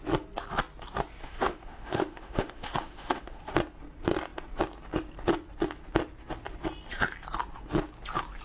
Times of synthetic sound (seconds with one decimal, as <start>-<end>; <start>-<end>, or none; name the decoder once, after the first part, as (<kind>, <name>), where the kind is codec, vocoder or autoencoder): 1.2-3.4 (autoencoder, DAC-VAE)